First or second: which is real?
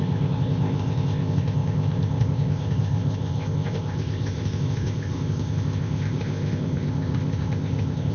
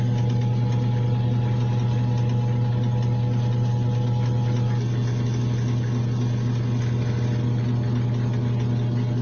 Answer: second